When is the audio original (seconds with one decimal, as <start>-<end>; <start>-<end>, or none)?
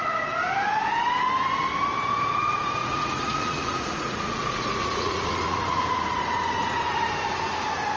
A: 0.0-2.8; 7.1-8.0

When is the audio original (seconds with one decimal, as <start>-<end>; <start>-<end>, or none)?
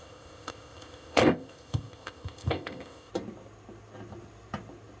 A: 3.1-5.0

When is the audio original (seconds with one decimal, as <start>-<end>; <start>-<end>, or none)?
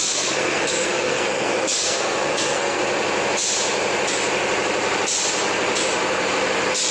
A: 2.8-6.9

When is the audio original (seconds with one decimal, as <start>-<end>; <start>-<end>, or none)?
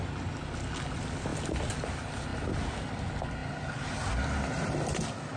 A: 0.0-5.4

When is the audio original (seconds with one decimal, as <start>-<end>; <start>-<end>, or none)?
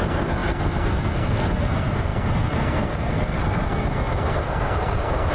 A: none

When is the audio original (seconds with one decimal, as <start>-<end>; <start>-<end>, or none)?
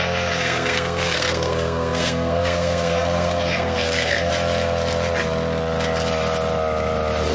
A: 4.3-7.3